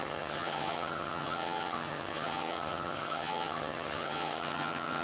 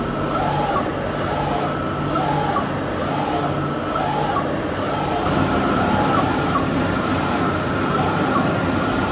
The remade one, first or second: first